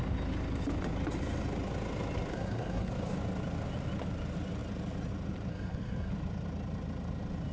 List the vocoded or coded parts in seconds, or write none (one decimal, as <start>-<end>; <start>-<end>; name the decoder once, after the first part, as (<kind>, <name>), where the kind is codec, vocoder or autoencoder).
2.3-2.9 (codec, SNAC); 5.5-6.1